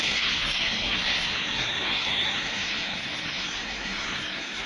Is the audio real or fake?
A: fake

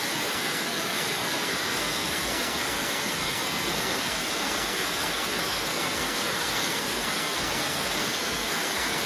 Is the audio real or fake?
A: fake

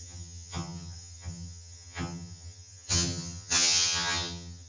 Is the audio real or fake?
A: fake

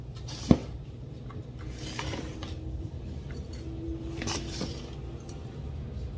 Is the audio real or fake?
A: fake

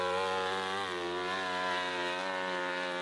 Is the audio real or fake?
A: real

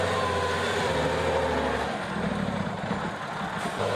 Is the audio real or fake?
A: real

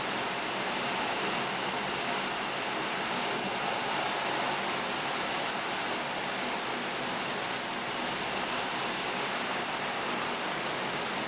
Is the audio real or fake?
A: real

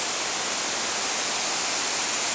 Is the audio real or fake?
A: fake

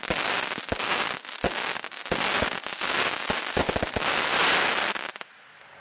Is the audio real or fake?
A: real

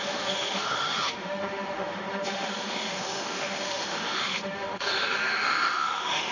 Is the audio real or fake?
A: fake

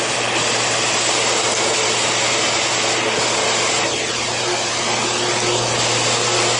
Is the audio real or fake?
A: real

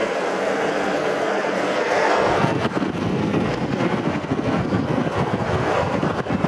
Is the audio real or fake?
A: fake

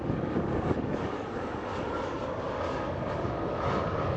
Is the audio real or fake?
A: fake